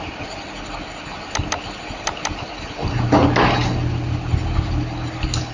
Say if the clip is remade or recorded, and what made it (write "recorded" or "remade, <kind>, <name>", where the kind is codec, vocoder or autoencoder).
recorded